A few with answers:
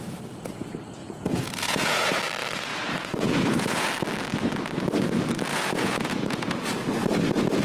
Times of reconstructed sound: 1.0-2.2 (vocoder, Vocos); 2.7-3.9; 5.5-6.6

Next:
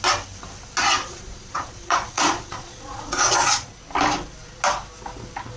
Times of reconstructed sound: 1.0-3.7 (vocoder, Vocos)